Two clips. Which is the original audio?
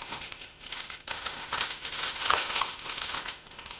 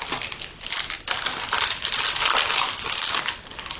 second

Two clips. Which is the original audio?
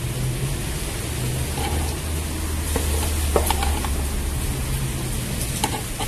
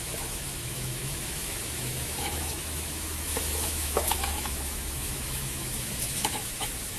first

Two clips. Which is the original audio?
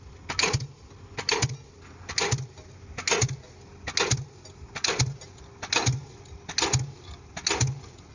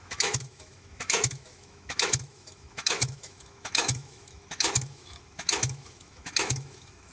first